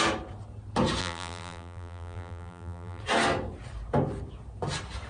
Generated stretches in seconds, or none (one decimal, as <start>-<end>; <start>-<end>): 1.0-3.0